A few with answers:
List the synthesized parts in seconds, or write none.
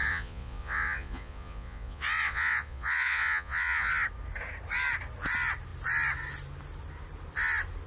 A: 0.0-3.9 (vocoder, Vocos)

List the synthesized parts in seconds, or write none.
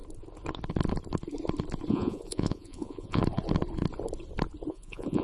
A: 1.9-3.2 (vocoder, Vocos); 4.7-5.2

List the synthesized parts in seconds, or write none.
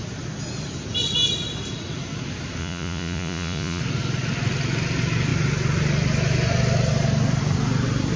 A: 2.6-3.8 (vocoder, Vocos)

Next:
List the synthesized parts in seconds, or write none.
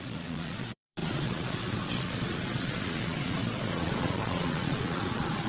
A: 0.0-5.5 (vocoder, Vocos)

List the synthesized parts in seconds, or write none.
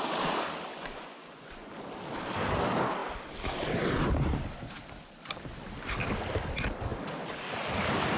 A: 0.7-1.7 (vocoder, Vocos)